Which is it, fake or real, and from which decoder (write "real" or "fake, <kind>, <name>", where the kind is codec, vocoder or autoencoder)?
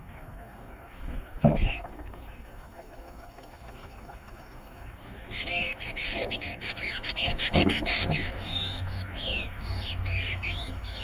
fake, codec, DAC